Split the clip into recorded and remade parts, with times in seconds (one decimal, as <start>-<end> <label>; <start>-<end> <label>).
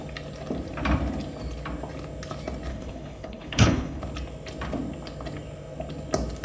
0.0-2.7 recorded; 2.7-4.0 remade; 4.0-6.4 recorded